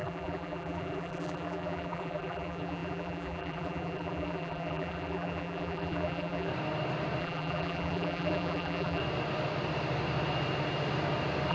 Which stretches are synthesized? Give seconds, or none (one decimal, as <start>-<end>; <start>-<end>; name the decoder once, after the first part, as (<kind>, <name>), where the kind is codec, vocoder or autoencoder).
0.0-6.5 (vocoder, BigVGAN v2); 7.2-9.0